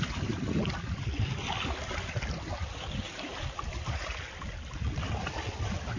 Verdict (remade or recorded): recorded